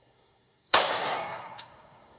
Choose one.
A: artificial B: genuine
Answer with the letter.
A